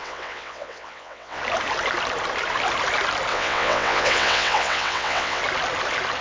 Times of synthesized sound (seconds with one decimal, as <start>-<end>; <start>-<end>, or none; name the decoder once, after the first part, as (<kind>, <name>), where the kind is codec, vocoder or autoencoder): 0.0-1.4 (vocoder, WaveNeXt); 3.3-5.4